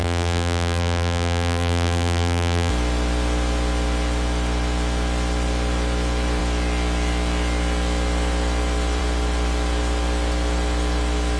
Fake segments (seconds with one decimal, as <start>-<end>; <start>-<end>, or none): 0.0-2.7